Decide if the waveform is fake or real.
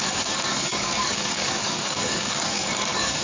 fake